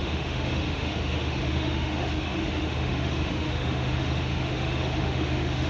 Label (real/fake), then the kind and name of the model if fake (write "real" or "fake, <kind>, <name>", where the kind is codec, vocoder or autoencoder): fake, autoencoder, DAC-VAE